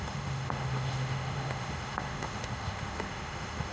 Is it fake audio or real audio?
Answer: fake